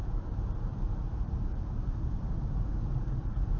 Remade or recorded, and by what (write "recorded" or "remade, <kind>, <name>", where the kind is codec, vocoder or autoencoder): remade, vocoder, BigVGAN v2